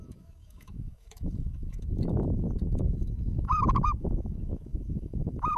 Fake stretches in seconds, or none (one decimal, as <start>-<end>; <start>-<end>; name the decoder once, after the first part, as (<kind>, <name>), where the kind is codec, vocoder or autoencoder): 0.0-5.6 (autoencoder, DAC-VAE)

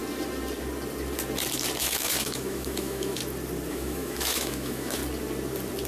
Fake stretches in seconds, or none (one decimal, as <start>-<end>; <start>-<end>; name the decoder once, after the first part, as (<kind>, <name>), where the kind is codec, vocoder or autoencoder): 1.8-3.2 (autoencoder, DAC-VAE); 3.7-5.0

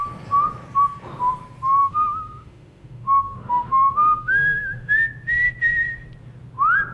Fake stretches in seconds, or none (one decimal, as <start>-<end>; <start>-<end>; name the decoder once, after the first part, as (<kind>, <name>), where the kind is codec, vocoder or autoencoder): 1.8-4.9 (autoencoder, DAC-VAE)

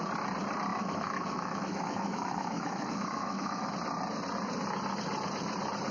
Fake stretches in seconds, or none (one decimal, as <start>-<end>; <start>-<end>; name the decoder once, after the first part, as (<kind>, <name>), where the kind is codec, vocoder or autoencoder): 0.7-3.7 (autoencoder, DAC-VAE)

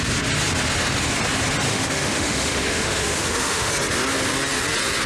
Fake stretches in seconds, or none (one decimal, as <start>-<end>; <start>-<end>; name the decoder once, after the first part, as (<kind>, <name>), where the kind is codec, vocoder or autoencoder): 1.7-3.7 (autoencoder, DAC-VAE)

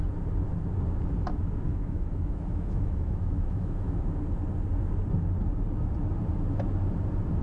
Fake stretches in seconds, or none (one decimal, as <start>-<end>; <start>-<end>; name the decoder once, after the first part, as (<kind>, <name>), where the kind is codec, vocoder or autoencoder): 1.7-4.2 (autoencoder, DAC-VAE)